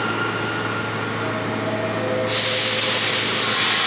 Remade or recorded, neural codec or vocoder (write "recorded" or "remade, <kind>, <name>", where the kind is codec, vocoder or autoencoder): recorded